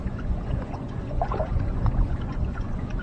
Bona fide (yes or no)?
no